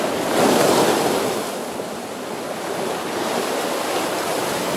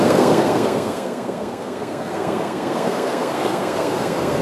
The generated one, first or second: second